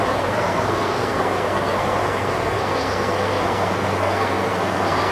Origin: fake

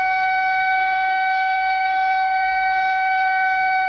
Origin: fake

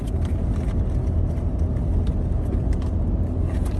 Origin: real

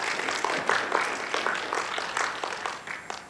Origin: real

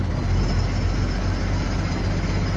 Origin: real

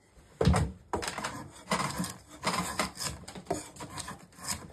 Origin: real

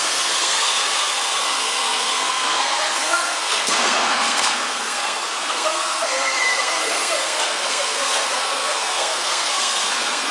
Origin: fake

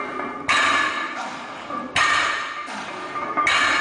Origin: real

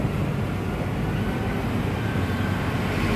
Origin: real